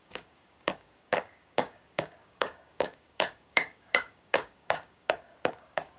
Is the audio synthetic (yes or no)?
yes